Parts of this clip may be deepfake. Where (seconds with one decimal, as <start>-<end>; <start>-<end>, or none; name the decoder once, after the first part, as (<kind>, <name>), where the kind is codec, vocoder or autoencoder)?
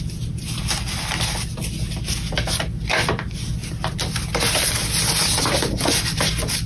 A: none